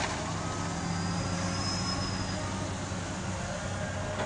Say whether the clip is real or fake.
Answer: real